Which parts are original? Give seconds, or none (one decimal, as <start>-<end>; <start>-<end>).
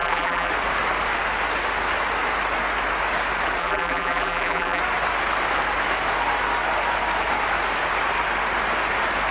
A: 0.5-3.6; 4.8-9.3